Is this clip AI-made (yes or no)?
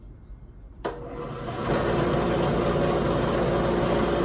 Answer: no